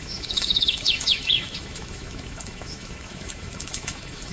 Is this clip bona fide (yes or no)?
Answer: no